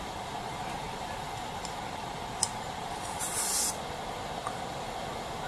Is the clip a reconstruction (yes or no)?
no